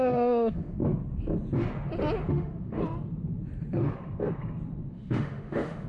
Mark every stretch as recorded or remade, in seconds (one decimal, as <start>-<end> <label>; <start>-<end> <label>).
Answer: 0.0-0.8 remade; 0.8-2.3 recorded; 2.3-2.8 remade; 2.8-4.9 recorded; 4.9-5.9 remade